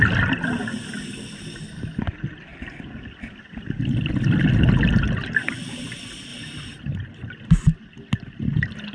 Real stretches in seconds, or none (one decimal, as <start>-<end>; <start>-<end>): 0.0-6.3; 6.9-8.9

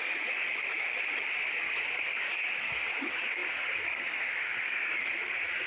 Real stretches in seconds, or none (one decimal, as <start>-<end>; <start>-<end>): 0.9-1.5

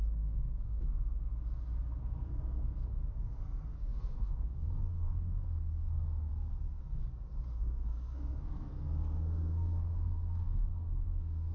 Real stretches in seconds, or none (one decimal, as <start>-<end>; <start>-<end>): 1.3-2.0; 6.3-7.5